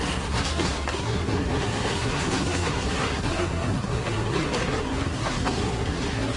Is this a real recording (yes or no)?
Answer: no